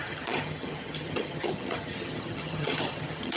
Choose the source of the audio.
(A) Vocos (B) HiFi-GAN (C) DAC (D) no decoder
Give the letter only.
B